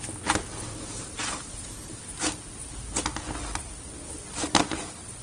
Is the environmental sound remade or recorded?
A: recorded